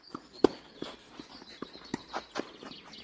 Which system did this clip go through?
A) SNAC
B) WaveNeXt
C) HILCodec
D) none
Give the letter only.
D